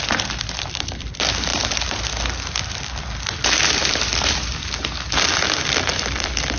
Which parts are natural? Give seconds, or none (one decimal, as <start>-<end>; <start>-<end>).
none